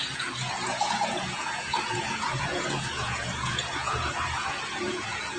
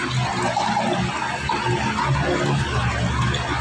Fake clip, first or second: first